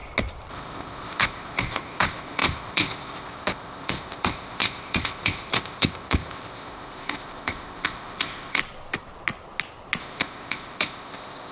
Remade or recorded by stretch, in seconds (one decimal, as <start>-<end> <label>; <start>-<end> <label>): 0.0-0.5 recorded; 0.5-8.6 remade; 8.6-10.0 recorded; 10.0-11.5 remade